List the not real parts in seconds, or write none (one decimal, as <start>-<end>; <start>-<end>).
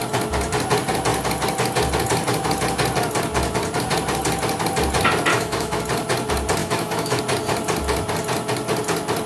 5.3-5.8; 6.6-7.2